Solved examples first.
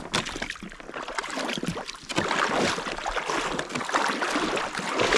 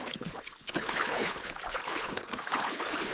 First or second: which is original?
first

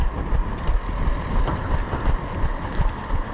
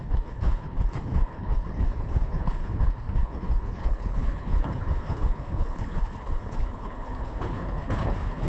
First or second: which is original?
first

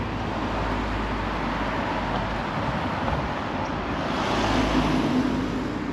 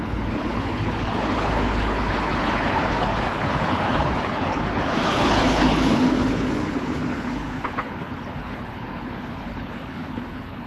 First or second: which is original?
first